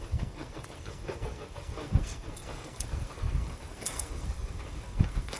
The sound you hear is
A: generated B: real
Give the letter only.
A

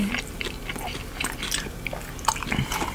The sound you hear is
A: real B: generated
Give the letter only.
A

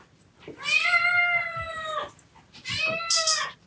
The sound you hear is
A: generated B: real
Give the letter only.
B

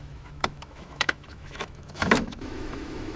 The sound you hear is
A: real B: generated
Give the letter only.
B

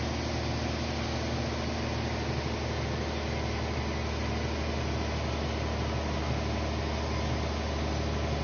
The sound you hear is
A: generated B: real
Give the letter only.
B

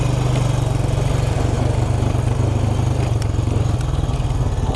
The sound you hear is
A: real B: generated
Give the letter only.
A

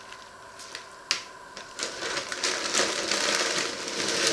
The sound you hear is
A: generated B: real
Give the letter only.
B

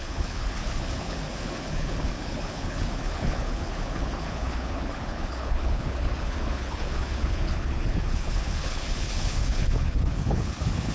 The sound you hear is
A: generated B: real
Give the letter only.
A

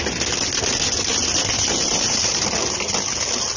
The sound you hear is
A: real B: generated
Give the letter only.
A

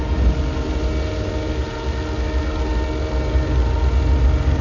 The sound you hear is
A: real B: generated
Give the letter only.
A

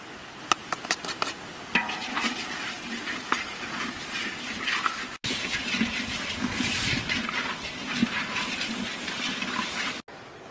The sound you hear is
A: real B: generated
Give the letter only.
A